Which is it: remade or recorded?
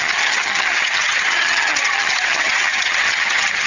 remade